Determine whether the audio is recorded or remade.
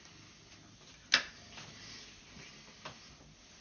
recorded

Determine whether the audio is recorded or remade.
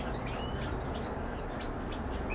recorded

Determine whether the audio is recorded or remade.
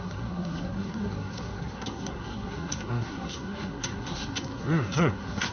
remade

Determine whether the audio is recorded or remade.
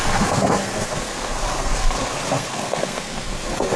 remade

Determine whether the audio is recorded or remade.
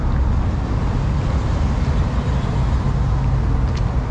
recorded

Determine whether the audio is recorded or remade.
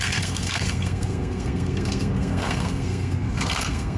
remade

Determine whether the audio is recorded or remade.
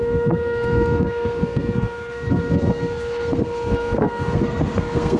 remade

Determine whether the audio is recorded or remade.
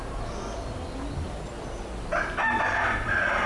recorded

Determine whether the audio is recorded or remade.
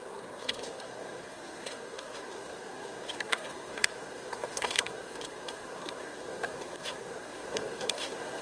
remade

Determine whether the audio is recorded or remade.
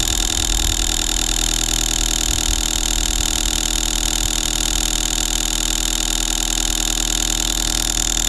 recorded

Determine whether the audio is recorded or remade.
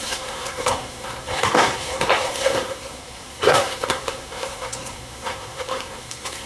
remade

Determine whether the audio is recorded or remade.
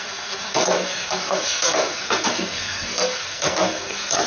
remade